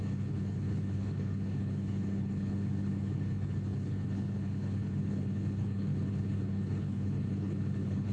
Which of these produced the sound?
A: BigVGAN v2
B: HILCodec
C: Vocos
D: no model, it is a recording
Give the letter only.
B